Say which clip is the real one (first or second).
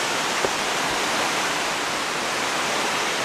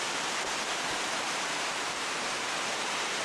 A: first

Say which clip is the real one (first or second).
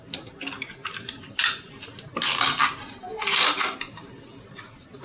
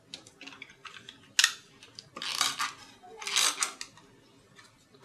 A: second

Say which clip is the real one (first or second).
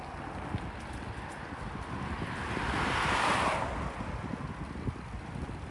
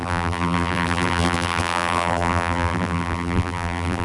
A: first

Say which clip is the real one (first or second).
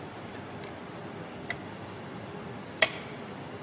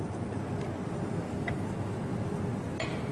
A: second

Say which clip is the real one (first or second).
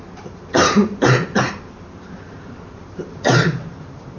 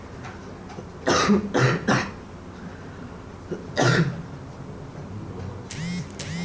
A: second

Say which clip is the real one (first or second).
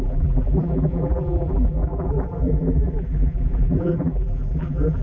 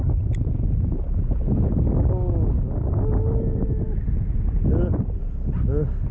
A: second